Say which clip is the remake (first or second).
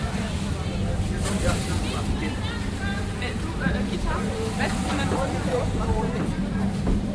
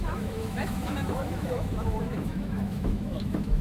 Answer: second